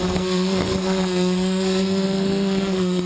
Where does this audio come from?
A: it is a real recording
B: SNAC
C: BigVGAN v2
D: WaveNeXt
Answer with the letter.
B